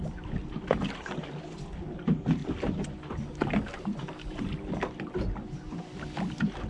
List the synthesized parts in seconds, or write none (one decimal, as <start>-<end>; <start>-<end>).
none